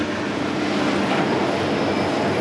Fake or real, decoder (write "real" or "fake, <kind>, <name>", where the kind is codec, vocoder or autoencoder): real